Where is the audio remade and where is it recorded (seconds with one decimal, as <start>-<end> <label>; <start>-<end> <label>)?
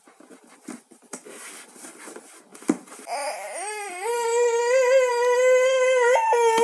0.0-6.6 recorded